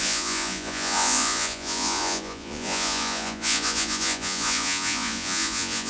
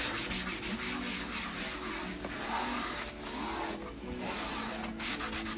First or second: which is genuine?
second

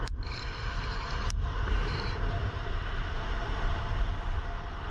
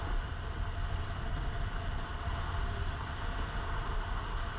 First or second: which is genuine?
second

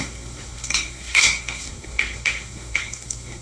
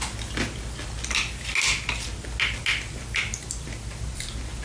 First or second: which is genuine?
second